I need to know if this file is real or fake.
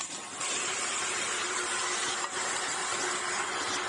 real